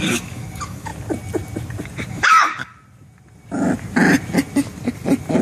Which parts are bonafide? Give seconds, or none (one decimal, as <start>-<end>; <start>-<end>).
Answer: 0.9-2.1; 2.7-5.4

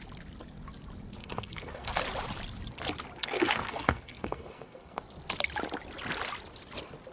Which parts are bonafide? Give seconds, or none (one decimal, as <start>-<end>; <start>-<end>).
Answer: 0.0-1.2; 2.0-3.2; 5.0-7.1

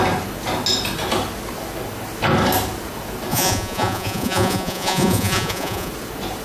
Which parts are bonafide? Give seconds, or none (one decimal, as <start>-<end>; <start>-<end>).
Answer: 0.0-3.3; 5.9-6.4

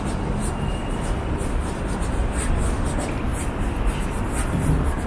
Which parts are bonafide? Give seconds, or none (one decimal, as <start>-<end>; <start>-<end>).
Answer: 0.0-5.1

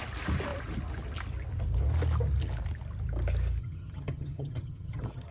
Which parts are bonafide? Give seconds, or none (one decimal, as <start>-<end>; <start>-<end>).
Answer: 0.0-3.6

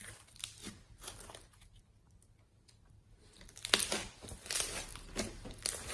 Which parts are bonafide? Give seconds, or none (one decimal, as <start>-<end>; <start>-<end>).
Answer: 0.0-5.9

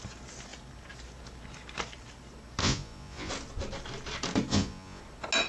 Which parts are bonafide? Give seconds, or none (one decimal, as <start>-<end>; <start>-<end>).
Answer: 0.0-2.6; 3.3-4.5; 5.0-5.5

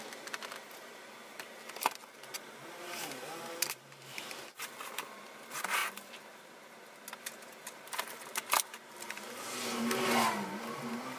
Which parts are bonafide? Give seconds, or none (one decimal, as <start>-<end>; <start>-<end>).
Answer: 0.0-11.2